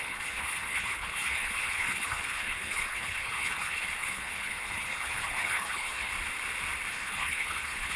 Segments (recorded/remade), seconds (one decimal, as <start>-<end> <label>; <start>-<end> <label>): 0.0-6.1 remade; 6.1-6.9 recorded; 6.9-8.0 remade